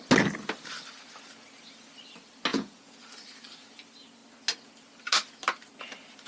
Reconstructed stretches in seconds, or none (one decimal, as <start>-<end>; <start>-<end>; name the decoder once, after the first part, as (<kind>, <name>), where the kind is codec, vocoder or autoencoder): 2.5-3.0 (vocoder, Vocos)